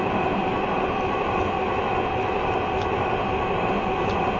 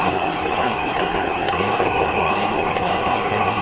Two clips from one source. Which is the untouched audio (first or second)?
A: first